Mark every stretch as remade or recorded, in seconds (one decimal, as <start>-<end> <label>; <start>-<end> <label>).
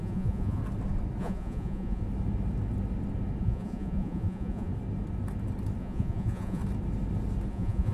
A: 0.0-0.6 remade; 0.6-1.2 recorded; 1.2-2.0 remade; 2.0-3.4 recorded; 3.4-4.7 remade; 4.7-5.8 recorded; 5.8-6.6 remade; 6.6-7.5 recorded; 7.5-7.9 remade